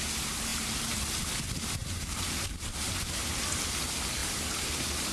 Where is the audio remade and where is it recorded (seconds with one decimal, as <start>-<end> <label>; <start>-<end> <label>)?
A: 0.0-0.5 recorded; 0.5-1.2 remade; 1.2-1.8 recorded; 1.8-3.0 remade; 3.0-4.2 recorded; 4.2-5.1 remade